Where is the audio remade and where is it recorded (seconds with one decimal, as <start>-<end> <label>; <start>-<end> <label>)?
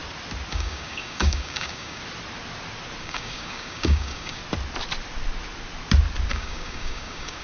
0.0-0.5 recorded; 0.5-2.0 remade; 2.0-3.0 recorded; 3.0-4.4 remade; 4.4-6.3 recorded; 6.3-7.4 remade